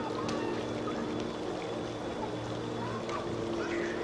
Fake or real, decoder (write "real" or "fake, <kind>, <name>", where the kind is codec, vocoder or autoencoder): real